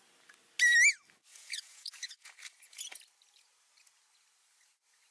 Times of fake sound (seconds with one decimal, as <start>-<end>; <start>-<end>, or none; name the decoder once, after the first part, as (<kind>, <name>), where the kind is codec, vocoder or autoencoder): 1.3-3.0 (vocoder, Vocos)